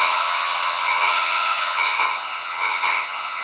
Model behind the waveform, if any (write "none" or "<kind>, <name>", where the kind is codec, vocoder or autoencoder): vocoder, HiFi-GAN